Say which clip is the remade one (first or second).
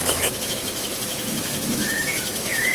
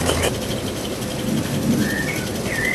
first